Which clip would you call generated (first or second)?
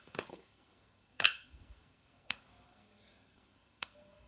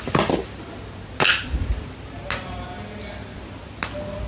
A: first